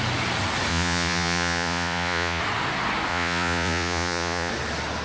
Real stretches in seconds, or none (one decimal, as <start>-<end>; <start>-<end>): 0.0-0.7; 2.4-3.1; 4.5-5.0